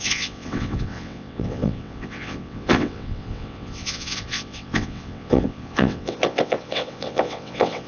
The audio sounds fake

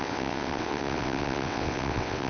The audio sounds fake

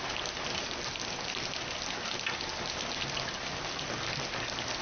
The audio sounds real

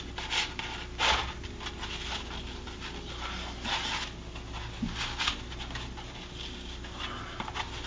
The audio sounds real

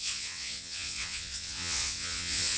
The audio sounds fake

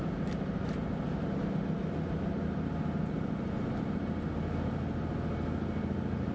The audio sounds real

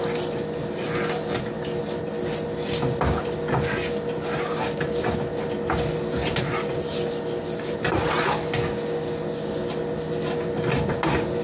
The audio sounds real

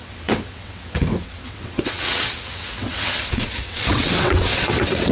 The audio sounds fake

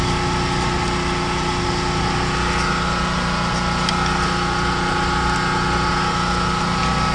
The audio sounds real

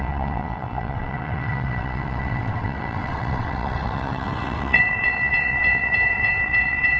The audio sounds fake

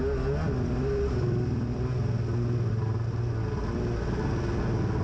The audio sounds real